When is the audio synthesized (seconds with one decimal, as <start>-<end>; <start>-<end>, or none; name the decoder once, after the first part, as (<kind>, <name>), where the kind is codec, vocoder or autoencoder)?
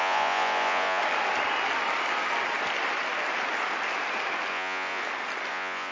0.0-1.0 (vocoder, Vocos); 4.5-5.0; 5.5-5.9